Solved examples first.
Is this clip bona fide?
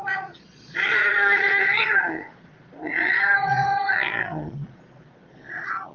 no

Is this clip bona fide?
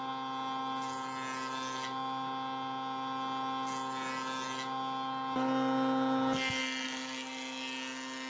yes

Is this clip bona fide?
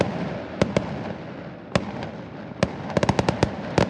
yes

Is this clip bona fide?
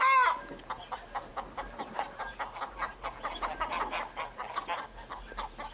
yes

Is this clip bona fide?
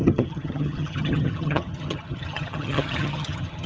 no